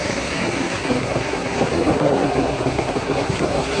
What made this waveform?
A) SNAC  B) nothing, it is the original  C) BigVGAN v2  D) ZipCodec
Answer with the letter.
A